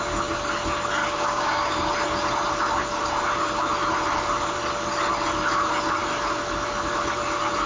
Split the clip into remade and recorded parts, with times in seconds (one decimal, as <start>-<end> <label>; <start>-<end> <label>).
0.0-1.0 recorded; 1.0-1.9 remade; 1.9-7.7 recorded